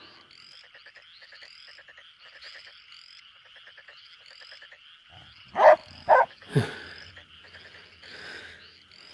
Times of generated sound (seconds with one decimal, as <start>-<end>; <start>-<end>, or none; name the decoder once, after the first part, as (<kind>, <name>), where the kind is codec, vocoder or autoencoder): 5.8-7.1 (codec, DAC)

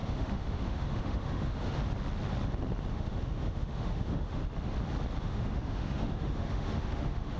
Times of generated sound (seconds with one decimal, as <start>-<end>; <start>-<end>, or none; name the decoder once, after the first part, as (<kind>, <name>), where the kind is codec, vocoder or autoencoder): 0.0-1.8 (autoencoder, DAC-VAE); 2.9-4.4; 5.2-7.4

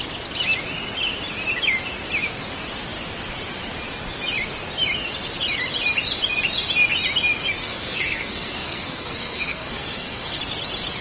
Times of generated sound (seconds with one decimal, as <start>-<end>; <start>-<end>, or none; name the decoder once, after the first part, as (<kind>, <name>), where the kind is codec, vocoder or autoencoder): 7.6-10.4 (codec, SNAC)

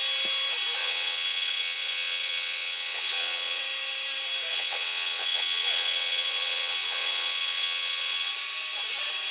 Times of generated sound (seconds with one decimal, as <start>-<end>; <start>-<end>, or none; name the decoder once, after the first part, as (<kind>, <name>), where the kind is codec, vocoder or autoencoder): 0.8-3.6 (vocoder, WaveNeXt); 4.5-8.3

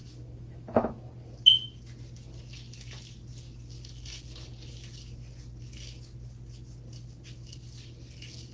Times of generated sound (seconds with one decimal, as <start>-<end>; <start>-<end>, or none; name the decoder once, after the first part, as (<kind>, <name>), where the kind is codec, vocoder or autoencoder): 0.0-0.9 (autoencoder, DAC-VAE)

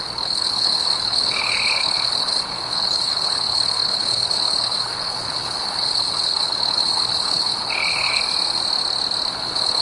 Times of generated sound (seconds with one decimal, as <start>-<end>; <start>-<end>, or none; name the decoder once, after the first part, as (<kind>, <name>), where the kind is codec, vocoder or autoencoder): 0.0-8.2 (codec, HILCodec); 9.3-9.8

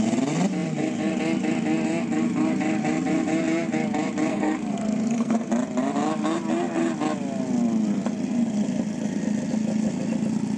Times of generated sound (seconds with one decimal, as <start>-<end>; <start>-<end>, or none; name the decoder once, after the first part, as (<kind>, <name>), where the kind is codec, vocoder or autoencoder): 4.3-5.5 (codec, SNAC)

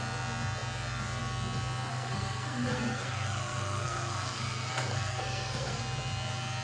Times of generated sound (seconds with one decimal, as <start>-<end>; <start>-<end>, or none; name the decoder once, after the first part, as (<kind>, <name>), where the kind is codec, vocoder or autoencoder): 1.9-5.8 (codec, SNAC)